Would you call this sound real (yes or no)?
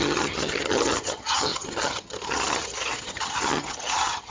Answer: no